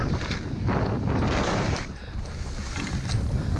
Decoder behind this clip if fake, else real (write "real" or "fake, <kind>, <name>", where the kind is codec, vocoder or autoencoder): real